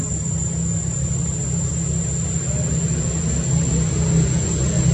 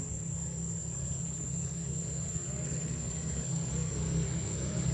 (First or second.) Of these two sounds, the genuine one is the first